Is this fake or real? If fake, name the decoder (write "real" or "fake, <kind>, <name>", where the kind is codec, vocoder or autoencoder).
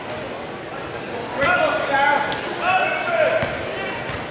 real